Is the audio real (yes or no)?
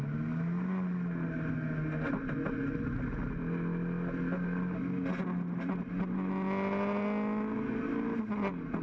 yes